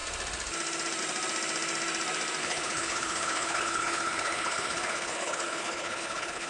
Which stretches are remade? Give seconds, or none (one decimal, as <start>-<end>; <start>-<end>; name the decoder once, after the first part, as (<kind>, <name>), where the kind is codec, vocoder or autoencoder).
2.4-6.5 (codec, HILCodec)